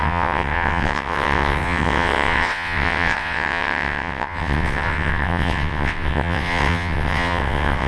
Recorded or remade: remade